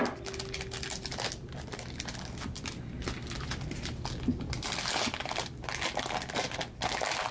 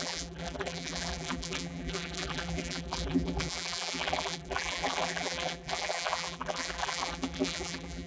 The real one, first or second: first